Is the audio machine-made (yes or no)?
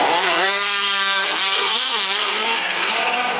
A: yes